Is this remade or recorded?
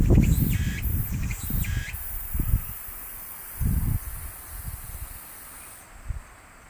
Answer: remade